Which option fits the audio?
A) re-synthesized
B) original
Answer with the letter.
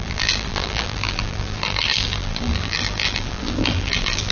A